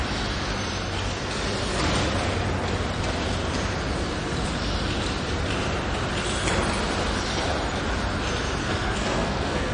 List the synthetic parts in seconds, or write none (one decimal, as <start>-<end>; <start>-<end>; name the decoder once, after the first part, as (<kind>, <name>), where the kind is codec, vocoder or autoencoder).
8.6-9.7 (codec, SNAC)